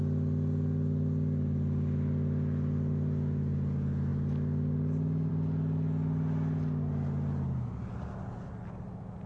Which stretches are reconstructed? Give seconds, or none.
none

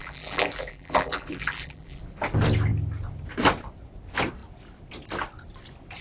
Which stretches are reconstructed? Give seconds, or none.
0.0-2.0 (vocoder, BigVGAN v2)

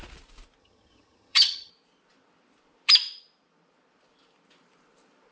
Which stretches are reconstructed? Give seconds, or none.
0.6-1.7 (vocoder, HiFi-GAN)

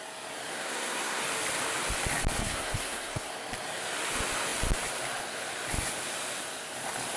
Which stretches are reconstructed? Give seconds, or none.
0.5-1.2 (codec, SNAC); 2.4-3.3